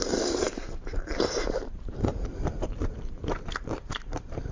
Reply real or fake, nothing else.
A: fake